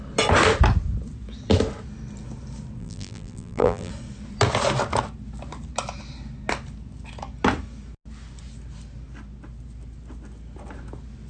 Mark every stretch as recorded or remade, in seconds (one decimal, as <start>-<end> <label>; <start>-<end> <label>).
0.0-2.8 recorded; 2.8-3.9 remade; 3.9-11.3 recorded